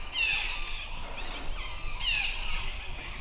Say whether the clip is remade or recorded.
recorded